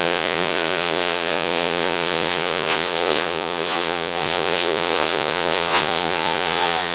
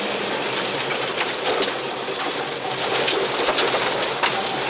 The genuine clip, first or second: second